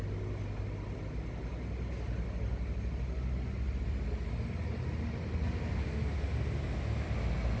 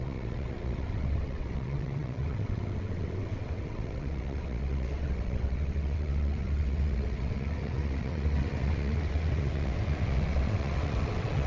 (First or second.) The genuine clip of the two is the first